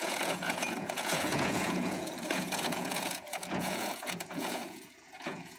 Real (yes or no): no